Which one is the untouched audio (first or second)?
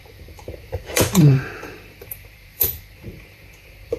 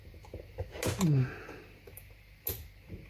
second